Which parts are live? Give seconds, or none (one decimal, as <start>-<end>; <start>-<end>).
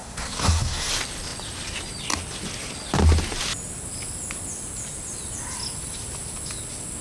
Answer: 0.9-7.0